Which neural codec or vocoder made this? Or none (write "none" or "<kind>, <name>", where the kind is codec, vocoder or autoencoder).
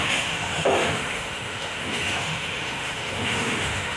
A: autoencoder, DAC-VAE